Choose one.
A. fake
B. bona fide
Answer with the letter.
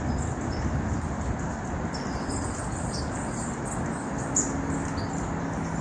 B